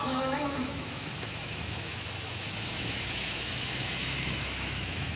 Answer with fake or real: fake